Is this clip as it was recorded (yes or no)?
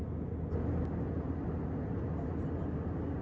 yes